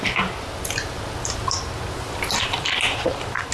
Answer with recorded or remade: recorded